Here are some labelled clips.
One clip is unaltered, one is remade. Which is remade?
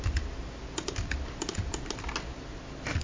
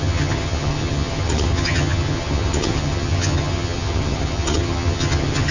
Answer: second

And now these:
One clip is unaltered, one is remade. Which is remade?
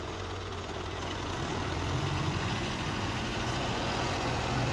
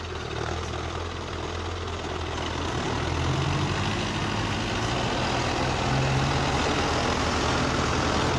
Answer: first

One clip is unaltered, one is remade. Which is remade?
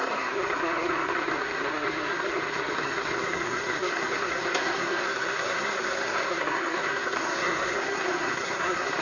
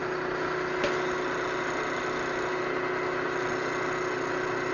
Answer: first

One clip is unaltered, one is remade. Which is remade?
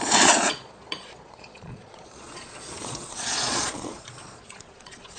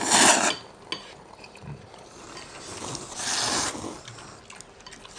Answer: first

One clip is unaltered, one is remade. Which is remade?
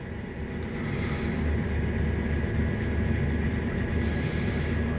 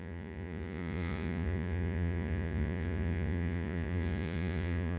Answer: second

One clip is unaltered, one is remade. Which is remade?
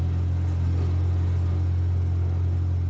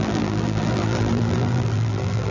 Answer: second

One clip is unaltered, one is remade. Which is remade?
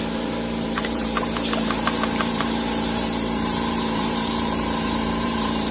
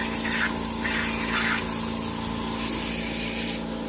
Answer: first